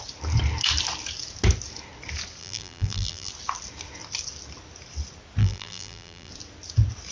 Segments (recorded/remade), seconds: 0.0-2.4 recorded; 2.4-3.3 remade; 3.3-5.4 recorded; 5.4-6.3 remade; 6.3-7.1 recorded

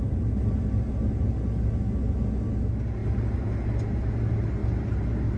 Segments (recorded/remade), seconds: 0.0-5.4 recorded

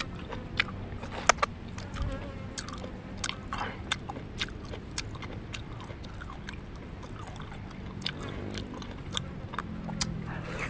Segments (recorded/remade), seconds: 0.0-10.7 recorded

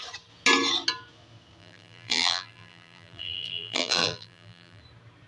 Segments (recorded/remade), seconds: 0.0-1.6 recorded; 1.6-4.8 remade; 4.8-5.3 recorded